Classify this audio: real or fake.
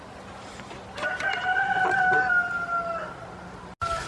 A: real